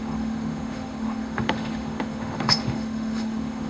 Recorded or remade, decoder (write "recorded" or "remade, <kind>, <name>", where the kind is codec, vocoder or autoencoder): remade, autoencoder, DAC-VAE